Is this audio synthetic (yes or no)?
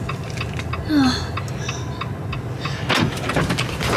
no